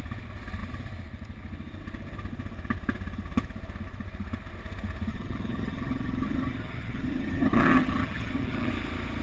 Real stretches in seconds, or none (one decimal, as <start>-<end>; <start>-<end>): 0.0-5.1; 8.7-9.2